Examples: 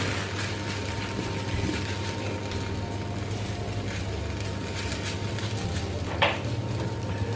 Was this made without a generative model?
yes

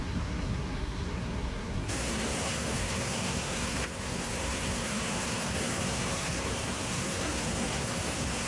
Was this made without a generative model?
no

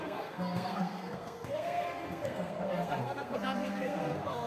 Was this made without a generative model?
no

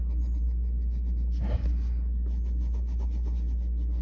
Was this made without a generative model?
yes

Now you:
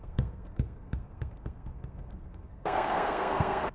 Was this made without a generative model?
no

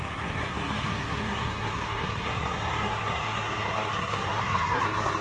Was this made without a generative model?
no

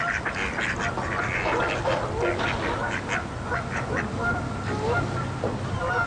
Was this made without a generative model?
yes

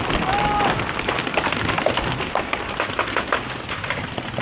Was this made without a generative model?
yes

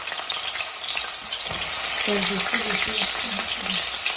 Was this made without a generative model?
yes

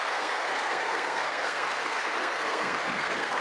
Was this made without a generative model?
no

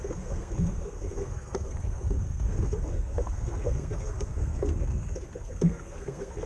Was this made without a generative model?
no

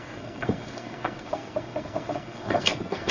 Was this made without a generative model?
no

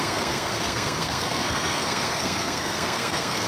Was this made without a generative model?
no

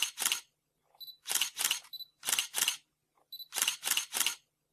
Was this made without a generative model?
yes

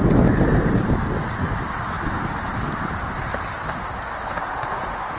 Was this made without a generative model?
yes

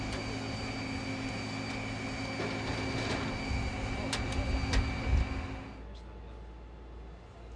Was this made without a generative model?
yes